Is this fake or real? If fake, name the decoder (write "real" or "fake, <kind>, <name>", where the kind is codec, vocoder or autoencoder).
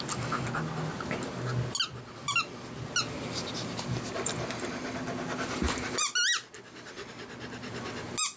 real